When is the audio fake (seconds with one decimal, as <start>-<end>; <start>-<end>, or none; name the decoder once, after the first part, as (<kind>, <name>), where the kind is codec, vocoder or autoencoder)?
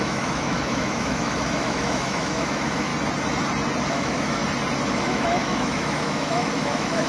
0.0-2.9 (autoencoder, DAC-VAE); 3.9-4.4; 4.9-7.1